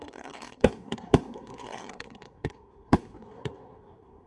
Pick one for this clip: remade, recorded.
remade